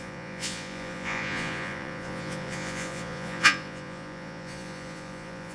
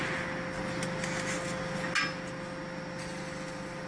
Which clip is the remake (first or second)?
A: first